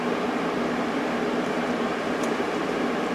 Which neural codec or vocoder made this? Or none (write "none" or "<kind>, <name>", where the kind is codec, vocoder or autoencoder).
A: vocoder, BigVGAN v2